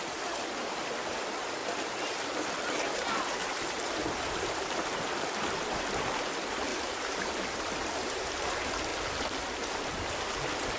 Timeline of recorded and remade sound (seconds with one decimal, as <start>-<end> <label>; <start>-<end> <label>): 0.0-1.6 recorded; 1.6-6.3 remade; 6.3-6.7 recorded; 6.7-7.7 remade; 7.7-10.8 recorded